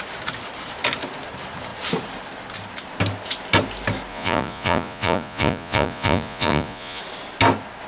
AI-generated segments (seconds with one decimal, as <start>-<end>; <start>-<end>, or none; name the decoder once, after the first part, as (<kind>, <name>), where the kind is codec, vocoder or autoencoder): 4.1-7.0 (vocoder, Vocos)